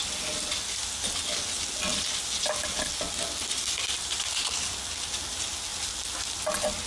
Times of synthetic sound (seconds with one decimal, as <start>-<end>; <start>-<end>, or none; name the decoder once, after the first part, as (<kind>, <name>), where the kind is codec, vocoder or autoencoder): none